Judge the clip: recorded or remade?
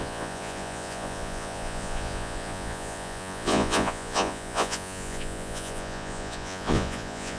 remade